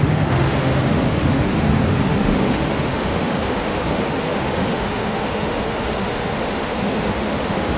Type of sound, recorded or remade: remade